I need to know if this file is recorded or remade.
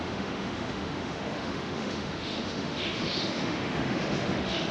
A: remade